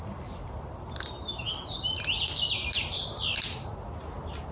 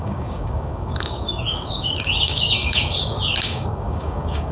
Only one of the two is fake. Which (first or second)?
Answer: second